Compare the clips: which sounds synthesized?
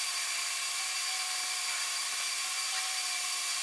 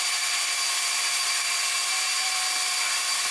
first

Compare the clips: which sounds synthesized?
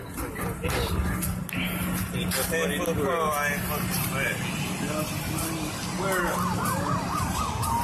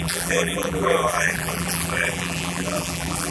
second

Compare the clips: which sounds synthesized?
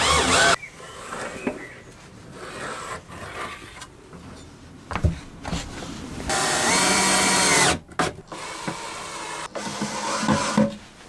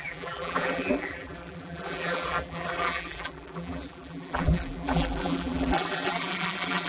second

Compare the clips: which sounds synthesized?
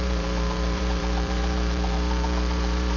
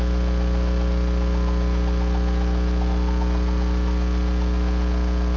first